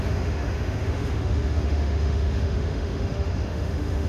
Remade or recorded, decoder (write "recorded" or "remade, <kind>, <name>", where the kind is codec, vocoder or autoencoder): remade, autoencoder, DAC-VAE